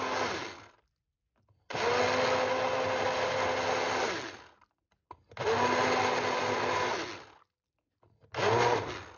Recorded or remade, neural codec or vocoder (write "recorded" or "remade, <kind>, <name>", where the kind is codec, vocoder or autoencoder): recorded